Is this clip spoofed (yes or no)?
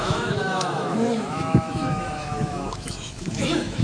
yes